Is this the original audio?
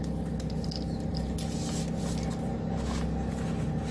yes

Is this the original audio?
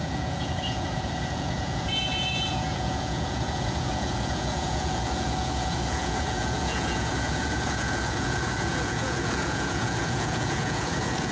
no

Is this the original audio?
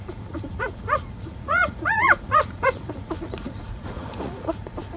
no